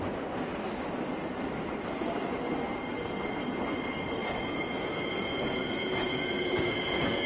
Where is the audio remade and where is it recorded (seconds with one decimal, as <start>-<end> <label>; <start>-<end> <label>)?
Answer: 0.0-4.2 recorded; 4.2-7.3 remade